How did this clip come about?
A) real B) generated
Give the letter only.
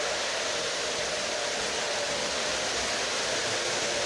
A